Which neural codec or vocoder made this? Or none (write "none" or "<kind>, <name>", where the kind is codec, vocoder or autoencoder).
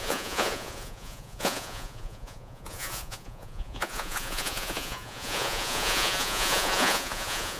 vocoder, Vocos